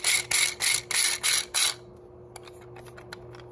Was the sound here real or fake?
real